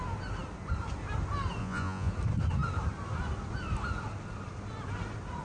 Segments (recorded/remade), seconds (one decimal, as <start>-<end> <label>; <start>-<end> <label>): 0.0-1.6 recorded; 1.6-2.1 remade; 2.1-5.4 recorded